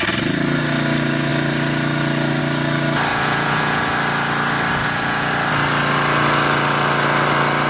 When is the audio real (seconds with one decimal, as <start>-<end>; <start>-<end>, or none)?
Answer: 0.0-3.1; 3.8-4.8; 5.3-7.7